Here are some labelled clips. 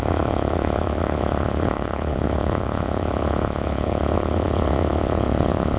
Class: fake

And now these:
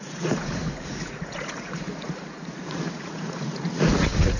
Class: fake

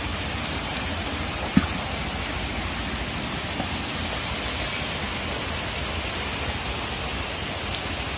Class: real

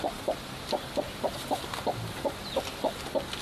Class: real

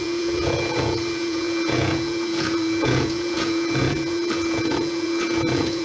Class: fake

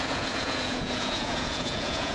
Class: fake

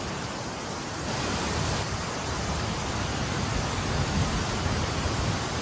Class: real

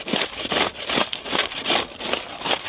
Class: real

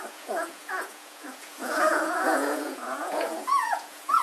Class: fake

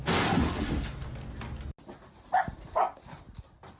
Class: real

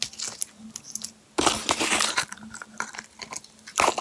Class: real